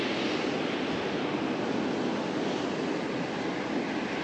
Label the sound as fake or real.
real